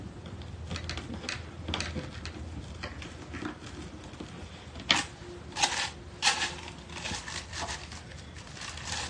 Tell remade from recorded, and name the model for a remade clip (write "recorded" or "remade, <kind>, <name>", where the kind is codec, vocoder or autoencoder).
recorded